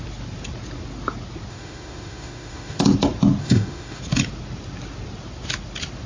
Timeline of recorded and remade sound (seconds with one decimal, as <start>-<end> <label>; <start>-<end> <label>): 0.0-1.5 recorded; 1.5-2.8 remade; 2.8-3.4 recorded; 3.4-4.0 remade; 4.0-6.1 recorded